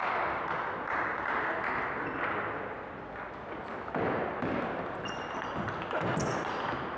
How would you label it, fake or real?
real